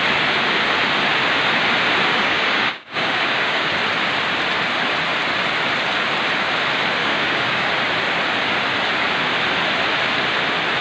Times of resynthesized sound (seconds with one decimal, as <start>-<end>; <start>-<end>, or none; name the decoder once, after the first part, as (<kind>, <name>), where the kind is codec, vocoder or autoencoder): 2.1-3.7 (codec, DAC); 7.0-7.7